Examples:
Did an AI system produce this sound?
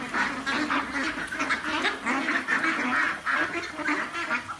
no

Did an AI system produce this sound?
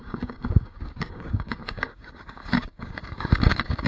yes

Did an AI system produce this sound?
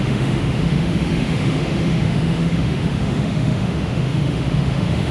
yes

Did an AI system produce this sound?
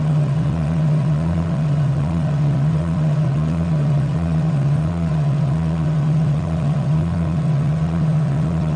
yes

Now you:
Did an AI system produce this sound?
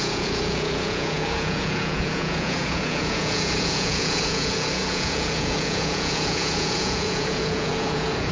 yes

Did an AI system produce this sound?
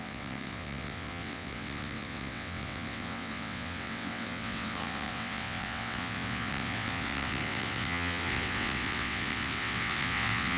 yes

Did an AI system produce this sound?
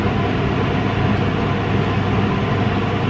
no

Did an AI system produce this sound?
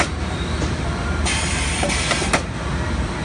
yes